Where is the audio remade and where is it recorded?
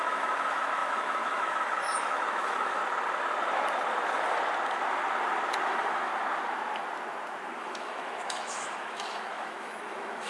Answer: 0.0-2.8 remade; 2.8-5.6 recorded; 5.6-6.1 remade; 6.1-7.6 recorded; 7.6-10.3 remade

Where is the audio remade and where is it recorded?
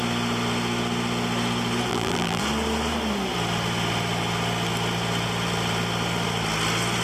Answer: 0.0-1.9 recorded; 1.9-2.4 remade; 2.4-7.0 recorded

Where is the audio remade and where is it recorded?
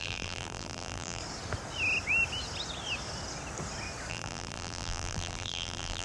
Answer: 0.0-1.2 remade; 1.2-4.1 recorded; 4.1-6.0 remade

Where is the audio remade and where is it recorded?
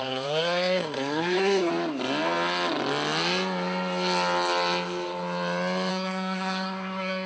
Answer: 0.0-1.7 remade; 1.7-5.9 recorded; 5.9-7.3 remade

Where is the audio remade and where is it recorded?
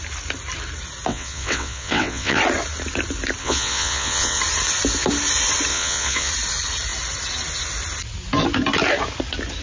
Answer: 0.0-1.1 recorded; 1.1-2.4 remade; 2.4-3.4 recorded; 3.4-4.4 remade; 4.4-5.7 recorded; 5.7-6.3 remade; 6.3-9.6 recorded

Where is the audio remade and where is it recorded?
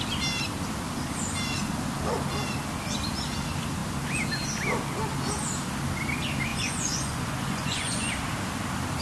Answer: 0.0-6.5 recorded; 6.5-8.1 remade; 8.1-9.0 recorded